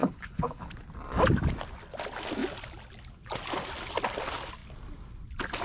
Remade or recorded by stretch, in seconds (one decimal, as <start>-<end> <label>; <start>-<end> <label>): 0.0-0.7 remade; 0.7-5.6 recorded